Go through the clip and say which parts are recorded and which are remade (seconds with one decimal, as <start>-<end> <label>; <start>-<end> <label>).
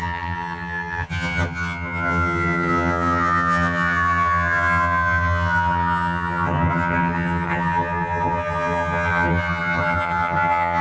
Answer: 0.0-10.8 remade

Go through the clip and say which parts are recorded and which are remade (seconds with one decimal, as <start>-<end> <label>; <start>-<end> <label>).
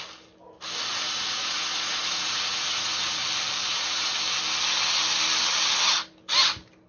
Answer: 0.0-0.9 recorded; 0.9-3.2 remade; 3.2-3.6 recorded; 3.6-4.2 remade; 4.2-6.9 recorded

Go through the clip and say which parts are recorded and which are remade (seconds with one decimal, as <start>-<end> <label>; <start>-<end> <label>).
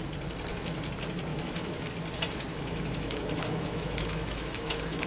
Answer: 0.0-1.3 recorded; 1.3-1.9 remade; 1.9-2.5 recorded; 2.5-5.1 remade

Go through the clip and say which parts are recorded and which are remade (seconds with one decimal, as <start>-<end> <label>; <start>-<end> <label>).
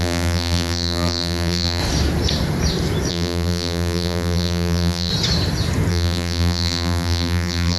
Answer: 0.0-1.8 remade; 1.8-3.1 recorded; 3.1-5.1 remade; 5.1-5.9 recorded; 5.9-7.8 remade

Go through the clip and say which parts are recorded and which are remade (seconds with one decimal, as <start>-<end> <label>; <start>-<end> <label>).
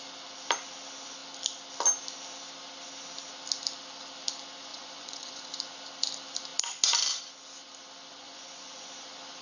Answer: 0.0-4.7 recorded; 4.7-5.5 remade; 5.5-8.1 recorded; 8.1-8.9 remade; 8.9-9.4 recorded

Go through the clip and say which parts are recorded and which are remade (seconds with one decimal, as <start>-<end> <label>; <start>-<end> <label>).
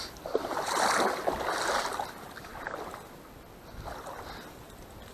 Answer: 0.0-2.5 recorded; 2.5-3.6 remade; 3.6-5.1 recorded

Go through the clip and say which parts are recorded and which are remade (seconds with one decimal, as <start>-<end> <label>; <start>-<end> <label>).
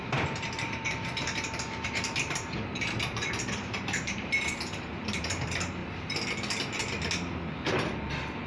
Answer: 0.0-5.8 remade; 5.8-8.5 recorded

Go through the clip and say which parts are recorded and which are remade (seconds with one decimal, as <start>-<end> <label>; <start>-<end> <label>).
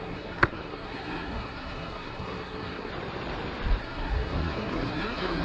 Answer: 0.0-2.9 remade; 2.9-3.8 recorded; 3.8-5.4 remade